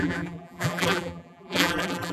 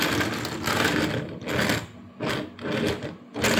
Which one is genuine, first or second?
second